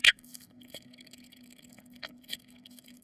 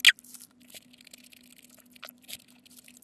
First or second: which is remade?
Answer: first